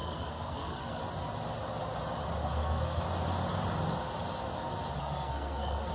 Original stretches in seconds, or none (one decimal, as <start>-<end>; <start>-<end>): 1.0-2.4; 3.0-5.0

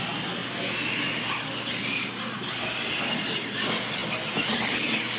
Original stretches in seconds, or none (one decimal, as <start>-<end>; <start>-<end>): 0.0-5.2

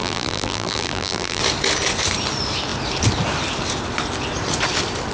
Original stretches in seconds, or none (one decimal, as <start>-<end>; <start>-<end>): 1.4-5.1

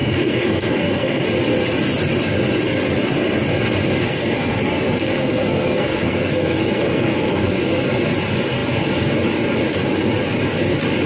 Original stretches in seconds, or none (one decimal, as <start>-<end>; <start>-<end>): 1.2-4.1; 7.8-11.1

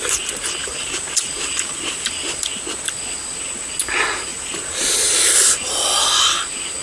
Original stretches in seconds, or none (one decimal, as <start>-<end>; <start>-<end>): 0.0-0.6; 2.4-4.3; 4.9-6.8

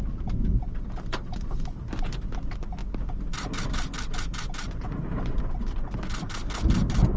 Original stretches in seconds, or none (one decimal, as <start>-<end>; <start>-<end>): 0.0-7.2

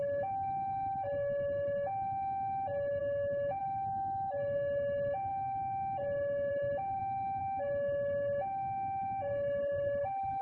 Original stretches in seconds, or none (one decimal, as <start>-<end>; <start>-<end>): 0.0-3.0; 3.6-7.0; 7.6-10.4

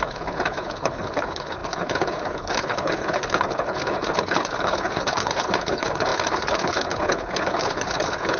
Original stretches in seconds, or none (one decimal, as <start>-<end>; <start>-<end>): none